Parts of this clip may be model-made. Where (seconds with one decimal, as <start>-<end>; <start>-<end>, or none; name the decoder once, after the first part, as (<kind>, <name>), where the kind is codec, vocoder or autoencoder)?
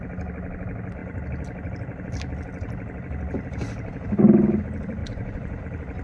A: 5.0-5.6 (vocoder, Vocos)